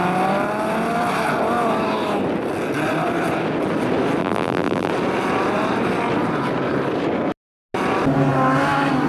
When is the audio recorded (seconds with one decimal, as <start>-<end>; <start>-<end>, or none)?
0.0-4.2; 4.9-9.1